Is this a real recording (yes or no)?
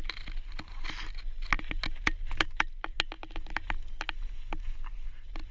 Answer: yes